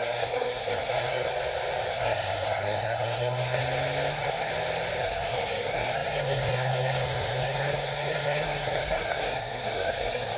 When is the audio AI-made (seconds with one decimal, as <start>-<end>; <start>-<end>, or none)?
0.0-1.3; 1.9-3.6; 4.1-4.5; 5.0-10.4